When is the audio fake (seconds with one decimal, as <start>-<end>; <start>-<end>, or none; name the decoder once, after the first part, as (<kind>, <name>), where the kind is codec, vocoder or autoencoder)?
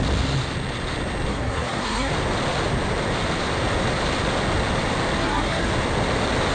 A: 1.3-2.1 (codec, SNAC); 5.2-5.7